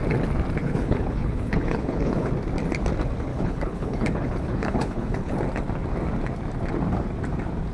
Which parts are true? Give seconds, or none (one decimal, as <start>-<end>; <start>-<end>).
0.0-0.6; 2.3-3.3; 5.3-7.7